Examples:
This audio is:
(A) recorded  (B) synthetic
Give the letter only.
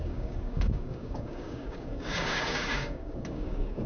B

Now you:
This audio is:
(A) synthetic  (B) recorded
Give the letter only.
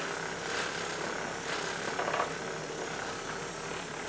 B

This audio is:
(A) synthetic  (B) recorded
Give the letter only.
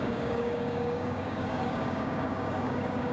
A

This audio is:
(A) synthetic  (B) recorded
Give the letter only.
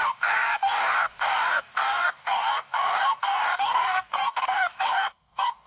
A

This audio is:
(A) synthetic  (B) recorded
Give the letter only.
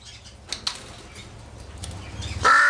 B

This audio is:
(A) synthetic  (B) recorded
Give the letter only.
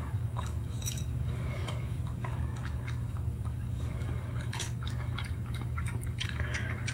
A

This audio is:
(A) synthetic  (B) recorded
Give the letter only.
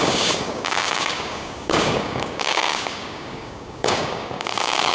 A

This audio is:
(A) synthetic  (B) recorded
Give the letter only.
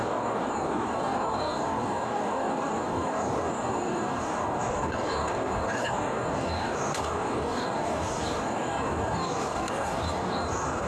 A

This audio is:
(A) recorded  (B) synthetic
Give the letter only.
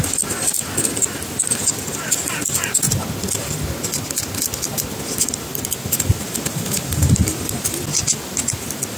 A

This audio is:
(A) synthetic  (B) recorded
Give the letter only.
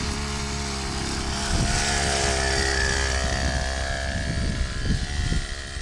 B